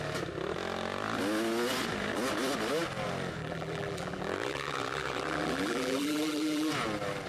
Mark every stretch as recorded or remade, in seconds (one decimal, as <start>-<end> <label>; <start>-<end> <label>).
0.0-3.4 recorded; 3.4-6.7 remade; 6.7-7.3 recorded